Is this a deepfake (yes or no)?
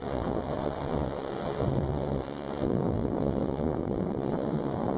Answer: yes